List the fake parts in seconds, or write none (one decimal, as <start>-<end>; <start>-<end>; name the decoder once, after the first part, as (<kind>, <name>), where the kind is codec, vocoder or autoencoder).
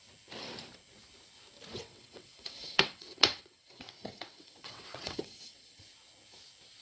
1.7-5.8 (vocoder, WaveNeXt)